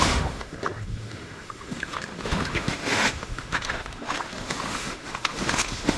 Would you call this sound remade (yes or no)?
yes